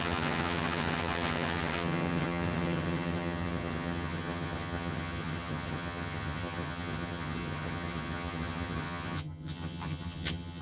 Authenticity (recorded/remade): remade